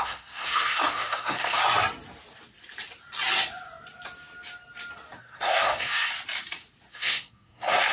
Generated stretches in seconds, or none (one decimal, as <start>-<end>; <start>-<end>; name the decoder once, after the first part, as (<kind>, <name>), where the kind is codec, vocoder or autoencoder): 0.0-1.6 (codec, SNAC); 5.2-6.1; 6.9-7.9